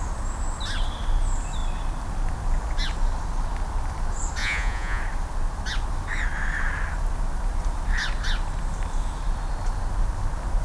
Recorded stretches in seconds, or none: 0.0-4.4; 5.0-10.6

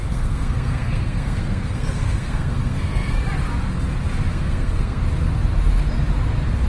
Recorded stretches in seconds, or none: 3.1-4.3; 5.0-6.7

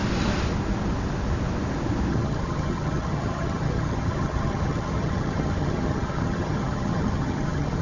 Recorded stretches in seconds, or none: 0.0-2.1

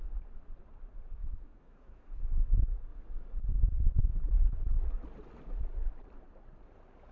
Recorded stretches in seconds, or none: 0.0-1.2; 2.2-7.1

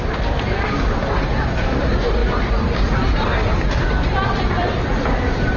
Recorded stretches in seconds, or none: 0.0-2.2

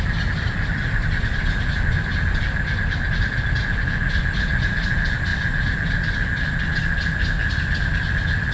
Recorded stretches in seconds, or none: 0.0-8.5

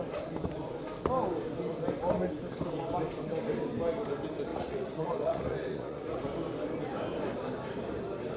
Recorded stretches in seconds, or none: 0.0-4.5; 6.2-8.4

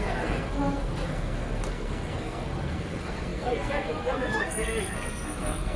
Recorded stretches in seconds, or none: none